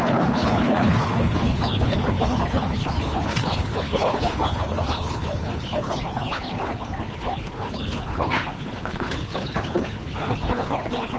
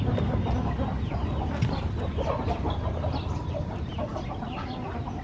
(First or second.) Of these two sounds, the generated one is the first